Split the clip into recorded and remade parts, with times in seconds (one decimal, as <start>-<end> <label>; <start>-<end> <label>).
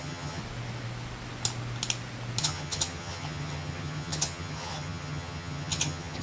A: 0.0-0.4 remade; 0.4-2.4 recorded; 2.4-6.2 remade